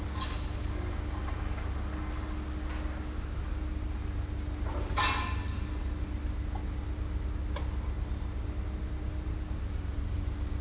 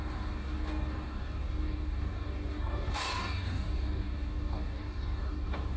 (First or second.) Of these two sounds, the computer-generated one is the second